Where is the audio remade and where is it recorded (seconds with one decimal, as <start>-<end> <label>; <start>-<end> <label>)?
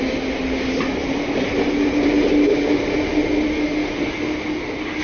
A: 0.0-5.0 recorded